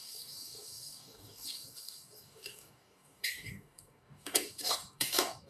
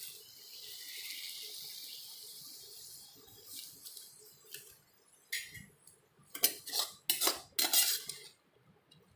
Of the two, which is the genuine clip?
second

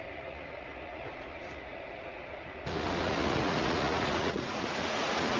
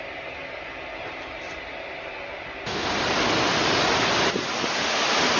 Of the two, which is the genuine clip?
second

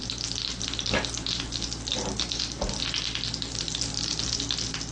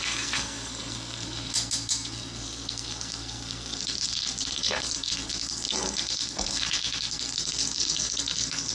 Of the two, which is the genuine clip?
first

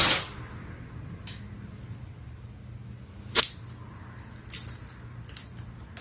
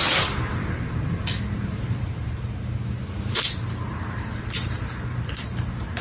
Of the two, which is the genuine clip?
first